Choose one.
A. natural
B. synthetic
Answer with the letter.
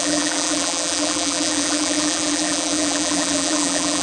B